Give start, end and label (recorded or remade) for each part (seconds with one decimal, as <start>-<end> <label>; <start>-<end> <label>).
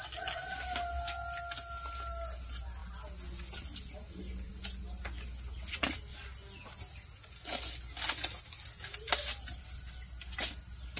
0.0-11.0 recorded